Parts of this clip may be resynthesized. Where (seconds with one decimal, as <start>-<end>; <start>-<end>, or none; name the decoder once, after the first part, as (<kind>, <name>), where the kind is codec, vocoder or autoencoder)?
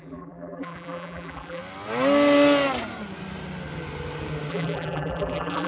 0.0-1.6 (vocoder, BigVGAN v2); 4.5-5.7